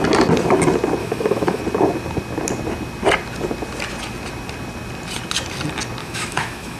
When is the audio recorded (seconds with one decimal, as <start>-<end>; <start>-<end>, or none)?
0.0-1.0; 1.6-6.0